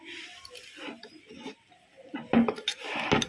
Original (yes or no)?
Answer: yes